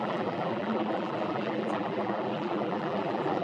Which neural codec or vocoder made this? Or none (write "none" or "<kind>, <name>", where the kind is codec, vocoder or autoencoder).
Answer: vocoder, BigVGAN v2